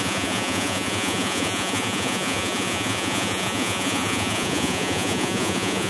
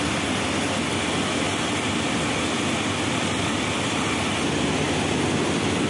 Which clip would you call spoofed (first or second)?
first